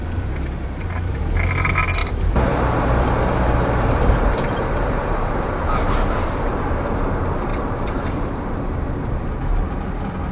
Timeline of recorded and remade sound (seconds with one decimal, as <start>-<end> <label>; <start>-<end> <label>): 0.0-2.0 recorded; 2.0-6.5 remade; 6.5-7.5 recorded; 7.5-8.5 remade; 8.5-10.3 recorded